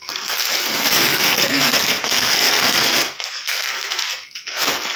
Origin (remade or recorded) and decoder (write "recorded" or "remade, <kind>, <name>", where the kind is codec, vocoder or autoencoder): remade, codec, SNAC